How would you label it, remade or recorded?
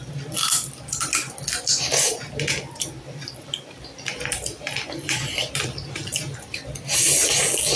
recorded